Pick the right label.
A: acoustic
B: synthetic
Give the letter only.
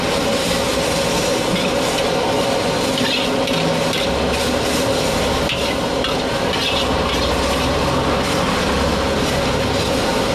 A